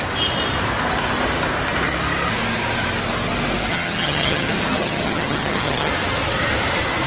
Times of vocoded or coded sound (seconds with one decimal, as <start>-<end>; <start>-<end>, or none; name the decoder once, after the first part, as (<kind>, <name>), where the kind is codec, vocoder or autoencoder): 3.7-5.9 (vocoder, HiFi-GAN)